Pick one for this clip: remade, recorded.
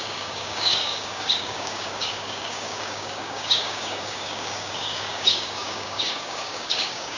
remade